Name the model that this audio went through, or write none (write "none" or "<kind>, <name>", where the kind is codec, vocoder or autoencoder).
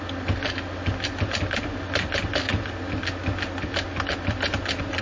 none